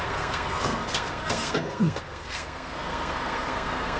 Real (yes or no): no